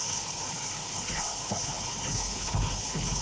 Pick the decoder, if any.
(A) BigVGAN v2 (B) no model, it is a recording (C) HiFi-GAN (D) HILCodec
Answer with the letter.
D